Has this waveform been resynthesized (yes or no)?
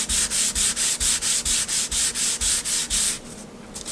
no